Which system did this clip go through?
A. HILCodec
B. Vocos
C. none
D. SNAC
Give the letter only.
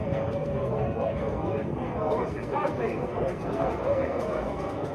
D